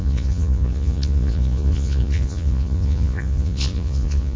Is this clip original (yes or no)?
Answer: no